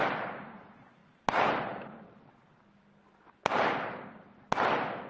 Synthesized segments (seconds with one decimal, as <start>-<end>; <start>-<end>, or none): none